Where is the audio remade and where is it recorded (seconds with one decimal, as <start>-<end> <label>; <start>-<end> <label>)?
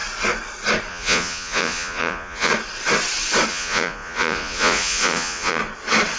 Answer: 0.0-0.9 recorded; 0.9-2.5 remade; 2.5-3.5 recorded; 3.5-5.6 remade; 5.6-6.2 recorded